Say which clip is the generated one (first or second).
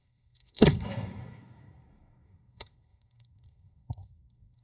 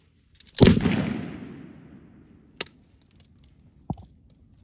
first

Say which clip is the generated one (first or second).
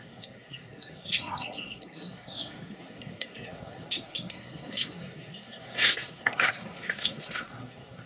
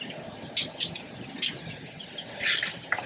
first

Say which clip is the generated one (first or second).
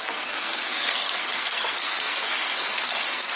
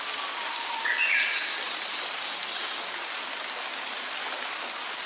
first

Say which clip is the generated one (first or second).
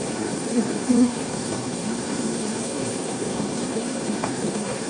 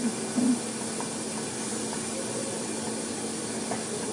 first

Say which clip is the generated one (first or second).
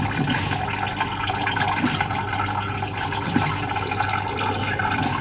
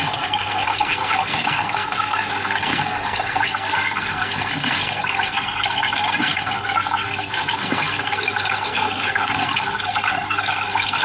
second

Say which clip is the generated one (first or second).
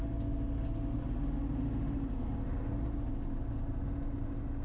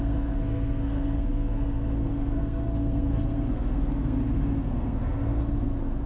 second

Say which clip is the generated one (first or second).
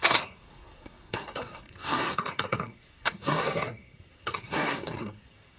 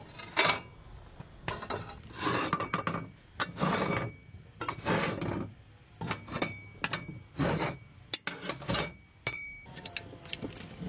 first